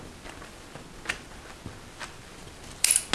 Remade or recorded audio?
recorded